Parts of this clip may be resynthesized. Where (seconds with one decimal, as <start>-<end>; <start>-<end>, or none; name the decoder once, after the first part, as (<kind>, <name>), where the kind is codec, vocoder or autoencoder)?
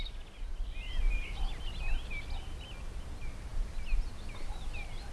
none